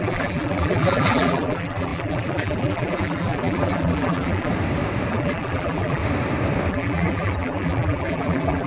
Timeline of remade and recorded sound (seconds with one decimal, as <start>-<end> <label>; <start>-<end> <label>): 0.0-4.5 remade; 4.5-5.1 recorded; 5.1-6.0 remade; 6.0-6.7 recorded; 6.7-8.7 remade